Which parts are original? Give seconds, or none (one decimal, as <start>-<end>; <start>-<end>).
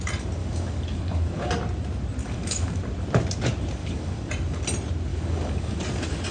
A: 0.0-0.4; 1.5-2.2; 2.8-3.8; 4.3-5.1; 5.8-6.3